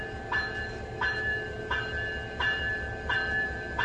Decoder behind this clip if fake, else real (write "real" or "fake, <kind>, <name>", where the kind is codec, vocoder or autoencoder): fake, vocoder, BigVGAN v2